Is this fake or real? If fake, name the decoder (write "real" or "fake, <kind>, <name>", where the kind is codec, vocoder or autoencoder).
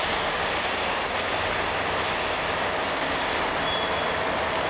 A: real